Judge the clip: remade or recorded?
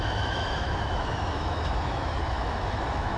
remade